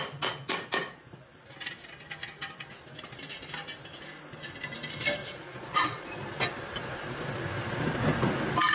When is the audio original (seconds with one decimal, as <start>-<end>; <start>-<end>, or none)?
0.0-5.2; 6.2-8.7